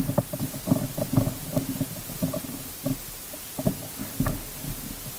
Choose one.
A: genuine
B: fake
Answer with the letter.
A